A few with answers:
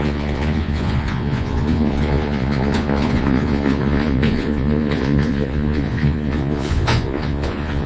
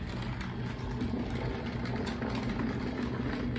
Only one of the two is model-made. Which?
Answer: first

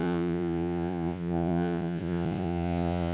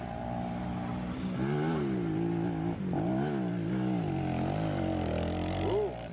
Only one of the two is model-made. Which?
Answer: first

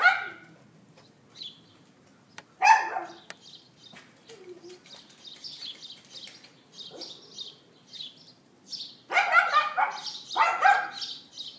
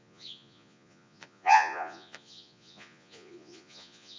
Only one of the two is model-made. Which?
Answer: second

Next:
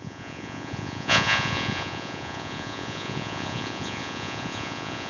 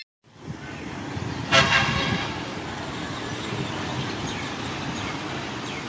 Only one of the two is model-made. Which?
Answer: first